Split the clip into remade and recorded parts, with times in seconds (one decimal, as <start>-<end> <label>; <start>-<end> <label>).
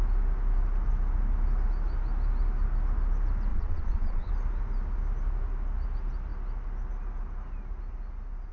0.0-3.5 recorded; 3.5-4.3 remade; 4.3-8.5 recorded